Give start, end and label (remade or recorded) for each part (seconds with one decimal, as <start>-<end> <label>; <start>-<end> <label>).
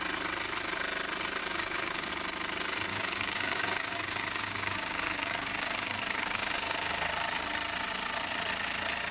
0.0-1.4 recorded; 1.4-2.1 remade; 2.1-2.9 recorded; 2.9-6.9 remade; 6.9-9.1 recorded